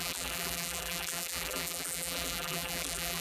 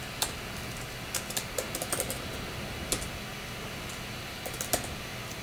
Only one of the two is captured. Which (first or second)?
second